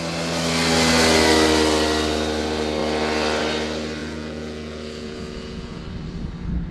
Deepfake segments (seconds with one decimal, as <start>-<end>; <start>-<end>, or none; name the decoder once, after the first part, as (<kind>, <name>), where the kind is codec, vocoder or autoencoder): 4.0-5.8 (vocoder, Vocos)